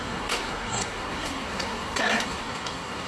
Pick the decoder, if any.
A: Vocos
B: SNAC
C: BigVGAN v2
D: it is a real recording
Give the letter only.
B